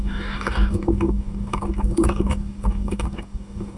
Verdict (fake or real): fake